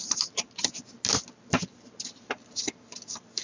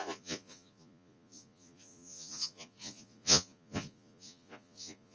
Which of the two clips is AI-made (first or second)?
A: second